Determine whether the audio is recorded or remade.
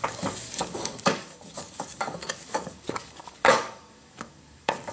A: remade